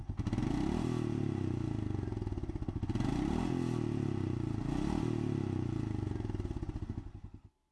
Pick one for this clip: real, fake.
real